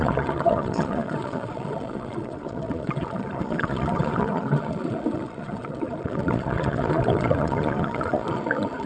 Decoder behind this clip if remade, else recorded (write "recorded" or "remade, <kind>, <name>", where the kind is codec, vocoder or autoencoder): remade, vocoder, Vocos